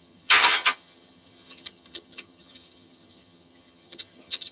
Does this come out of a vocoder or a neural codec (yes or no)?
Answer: yes